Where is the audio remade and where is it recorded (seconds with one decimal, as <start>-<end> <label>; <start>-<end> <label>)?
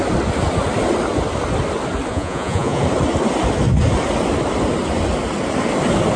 0.0-2.1 recorded; 2.1-2.8 remade; 2.8-6.2 recorded